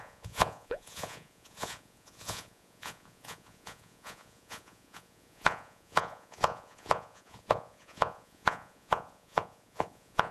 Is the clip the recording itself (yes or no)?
no